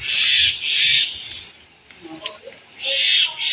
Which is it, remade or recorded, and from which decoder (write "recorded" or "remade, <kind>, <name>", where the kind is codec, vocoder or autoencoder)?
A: recorded